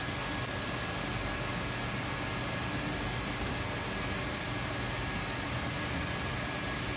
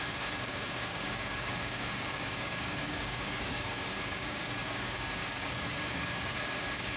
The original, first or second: first